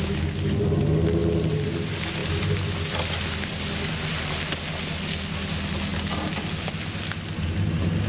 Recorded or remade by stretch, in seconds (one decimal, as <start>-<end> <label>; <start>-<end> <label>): 0.0-8.1 recorded